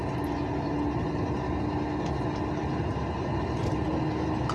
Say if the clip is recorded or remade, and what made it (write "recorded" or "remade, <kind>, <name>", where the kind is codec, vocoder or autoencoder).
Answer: recorded